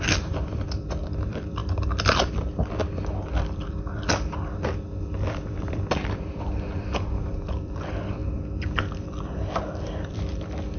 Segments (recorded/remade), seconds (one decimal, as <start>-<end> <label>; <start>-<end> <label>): 0.0-10.8 remade